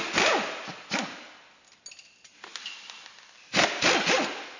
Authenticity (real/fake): real